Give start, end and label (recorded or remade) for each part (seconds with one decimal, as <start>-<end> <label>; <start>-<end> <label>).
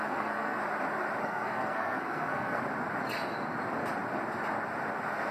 0.0-0.6 remade; 0.6-1.2 recorded; 1.2-2.6 remade; 2.6-5.3 recorded